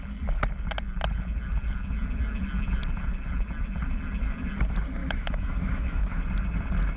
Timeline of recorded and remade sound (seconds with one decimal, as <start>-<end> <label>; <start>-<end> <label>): 0.0-5.0 recorded; 5.0-6.2 remade; 6.2-7.0 recorded